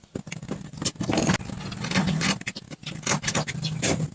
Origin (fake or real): real